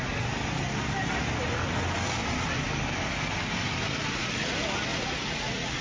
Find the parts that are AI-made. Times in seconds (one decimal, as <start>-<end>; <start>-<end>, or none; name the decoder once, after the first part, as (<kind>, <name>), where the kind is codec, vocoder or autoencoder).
4.9-5.8 (vocoder, Vocos)